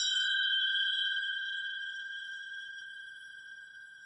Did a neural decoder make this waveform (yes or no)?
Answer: yes